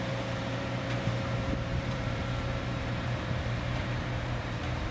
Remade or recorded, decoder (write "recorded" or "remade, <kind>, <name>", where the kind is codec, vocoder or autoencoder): remade, vocoder, BigVGAN v2